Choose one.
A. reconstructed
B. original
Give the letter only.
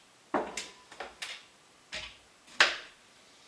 B